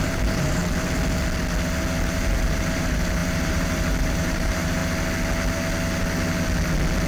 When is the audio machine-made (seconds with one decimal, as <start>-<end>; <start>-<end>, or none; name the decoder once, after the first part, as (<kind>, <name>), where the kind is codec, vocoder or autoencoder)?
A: 0.0-0.6 (vocoder, BigVGAN v2); 2.0-4.8